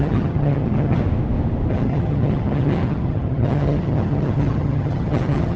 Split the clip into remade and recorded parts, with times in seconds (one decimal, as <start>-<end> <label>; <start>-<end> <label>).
0.0-1.0 remade; 1.0-1.7 recorded; 1.7-5.6 remade